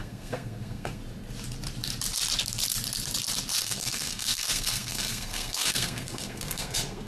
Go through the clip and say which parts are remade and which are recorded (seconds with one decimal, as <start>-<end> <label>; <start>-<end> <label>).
0.0-1.0 remade; 1.0-3.6 recorded; 3.6-7.1 remade